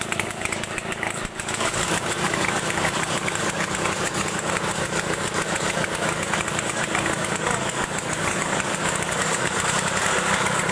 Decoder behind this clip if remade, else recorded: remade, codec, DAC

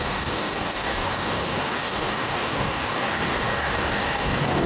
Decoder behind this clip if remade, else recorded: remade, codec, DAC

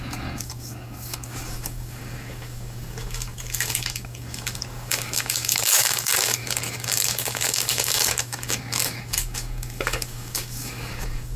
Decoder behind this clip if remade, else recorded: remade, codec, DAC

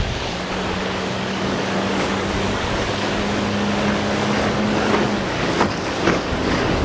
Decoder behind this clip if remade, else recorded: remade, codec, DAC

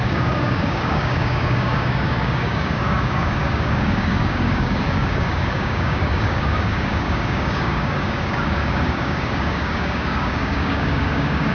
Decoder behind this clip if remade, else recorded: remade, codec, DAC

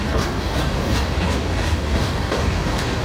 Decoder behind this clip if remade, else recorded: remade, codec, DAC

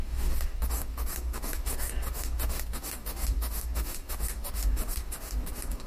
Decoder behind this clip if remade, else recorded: remade, codec, DAC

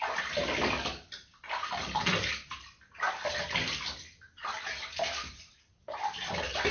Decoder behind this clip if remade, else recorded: recorded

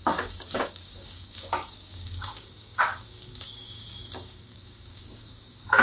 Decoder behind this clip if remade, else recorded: remade, codec, DAC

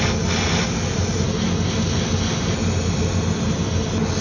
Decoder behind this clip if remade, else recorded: recorded